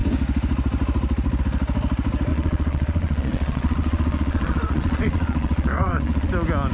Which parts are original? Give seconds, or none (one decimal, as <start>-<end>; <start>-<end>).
0.0-2.3; 6.3-6.7